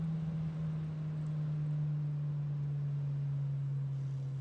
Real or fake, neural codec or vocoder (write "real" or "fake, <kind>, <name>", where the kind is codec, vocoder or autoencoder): real